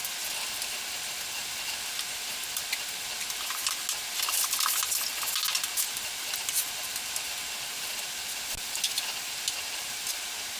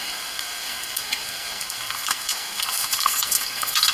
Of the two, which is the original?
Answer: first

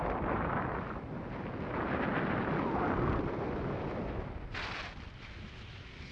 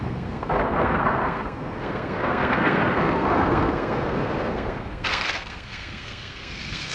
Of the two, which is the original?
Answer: first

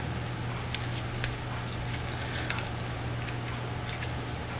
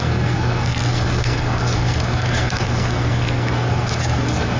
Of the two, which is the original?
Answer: first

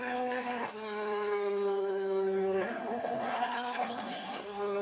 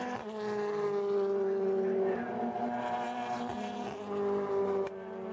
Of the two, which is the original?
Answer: second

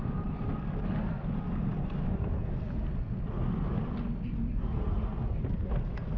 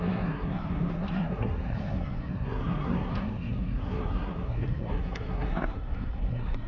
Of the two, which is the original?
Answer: first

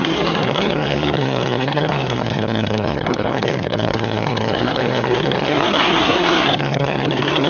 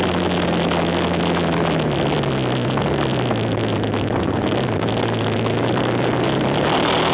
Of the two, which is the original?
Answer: second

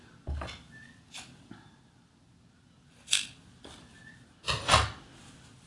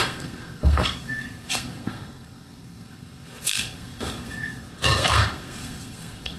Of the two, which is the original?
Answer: first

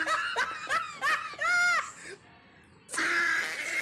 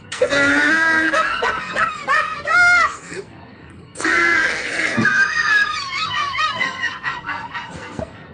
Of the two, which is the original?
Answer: first